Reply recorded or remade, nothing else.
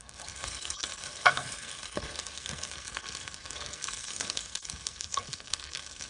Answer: remade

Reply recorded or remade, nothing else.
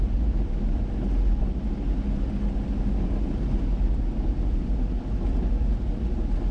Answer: recorded